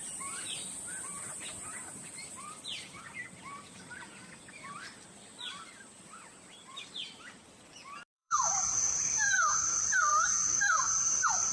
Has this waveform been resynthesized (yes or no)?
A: yes